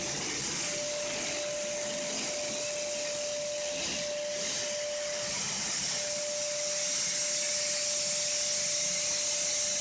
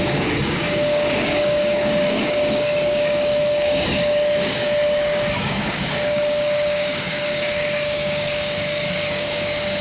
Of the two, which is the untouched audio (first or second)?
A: first